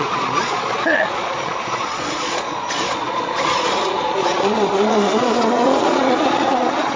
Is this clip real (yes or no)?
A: no